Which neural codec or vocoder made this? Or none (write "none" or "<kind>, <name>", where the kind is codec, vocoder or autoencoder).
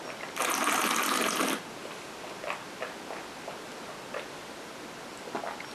none